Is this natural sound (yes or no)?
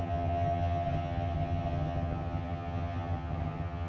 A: no